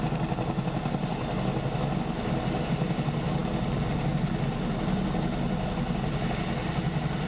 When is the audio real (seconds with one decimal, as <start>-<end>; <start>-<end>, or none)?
0.0-7.3